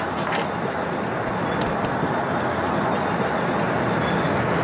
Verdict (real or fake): real